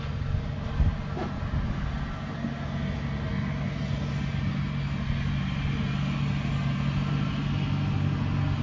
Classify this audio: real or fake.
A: real